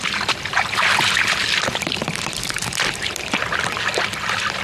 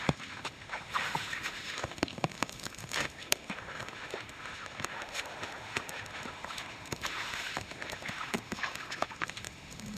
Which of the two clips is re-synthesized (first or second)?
second